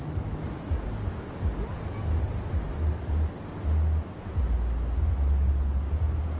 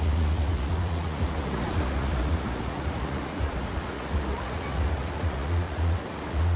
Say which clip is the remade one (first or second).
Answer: second